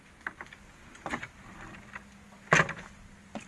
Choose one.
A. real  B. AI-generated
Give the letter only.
A